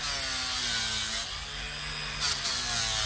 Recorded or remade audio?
recorded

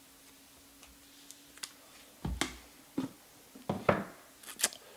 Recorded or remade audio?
recorded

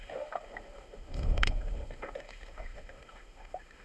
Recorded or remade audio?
remade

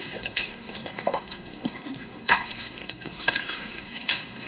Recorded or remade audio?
remade